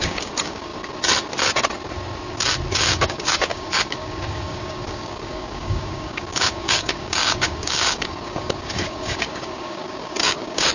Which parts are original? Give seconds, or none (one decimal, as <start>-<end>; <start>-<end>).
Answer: 0.7-2.7